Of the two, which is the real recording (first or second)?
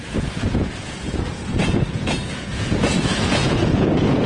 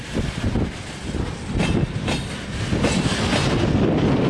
second